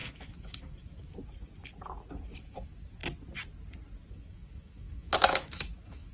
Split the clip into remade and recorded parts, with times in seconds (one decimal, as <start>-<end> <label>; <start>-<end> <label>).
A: 0.0-1.2 remade; 1.2-2.4 recorded; 2.4-3.0 remade; 3.0-4.1 recorded; 4.1-6.1 remade